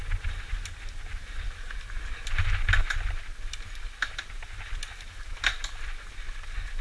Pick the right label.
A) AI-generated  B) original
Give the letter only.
B